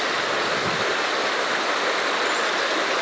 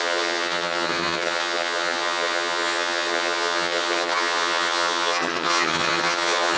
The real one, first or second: first